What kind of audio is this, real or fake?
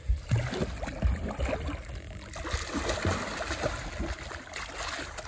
real